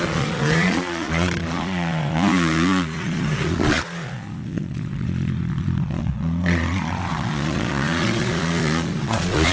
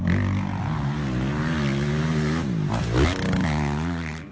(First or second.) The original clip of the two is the second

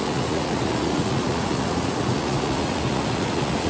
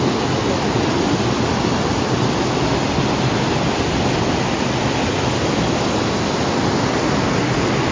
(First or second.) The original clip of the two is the second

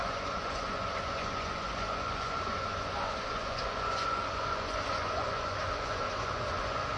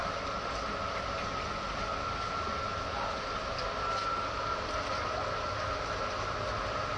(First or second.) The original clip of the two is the second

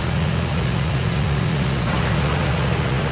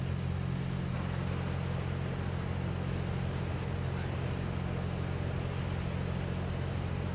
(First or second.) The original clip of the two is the second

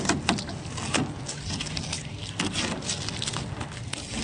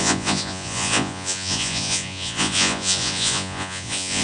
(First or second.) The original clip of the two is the first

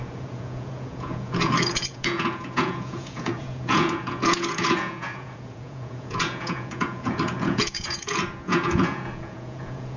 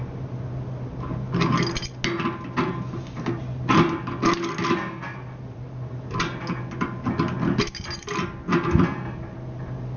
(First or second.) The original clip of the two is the second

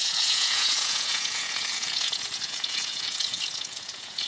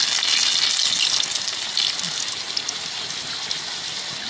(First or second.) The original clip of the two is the second